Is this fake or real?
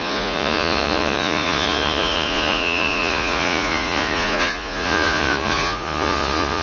fake